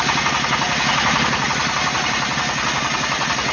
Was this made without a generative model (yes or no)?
no